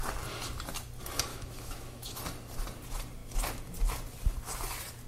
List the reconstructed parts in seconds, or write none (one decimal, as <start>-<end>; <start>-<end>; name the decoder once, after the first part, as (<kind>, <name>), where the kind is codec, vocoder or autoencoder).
1.3-2.2 (autoencoder, DAC-VAE)